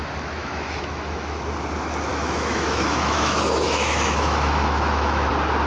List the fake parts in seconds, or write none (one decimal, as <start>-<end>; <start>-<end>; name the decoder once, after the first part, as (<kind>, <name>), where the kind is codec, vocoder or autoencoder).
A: 0.4-1.4 (autoencoder, DAC-VAE); 2.1-5.3